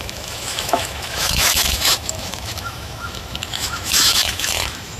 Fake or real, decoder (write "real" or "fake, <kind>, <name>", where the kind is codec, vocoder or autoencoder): fake, autoencoder, DAC-VAE